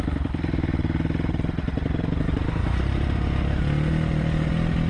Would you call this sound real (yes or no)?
yes